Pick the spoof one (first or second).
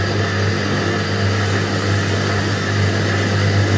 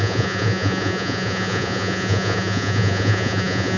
second